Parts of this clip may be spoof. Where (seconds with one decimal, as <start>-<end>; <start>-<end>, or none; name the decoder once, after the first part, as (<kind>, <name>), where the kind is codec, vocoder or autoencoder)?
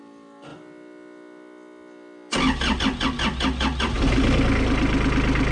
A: none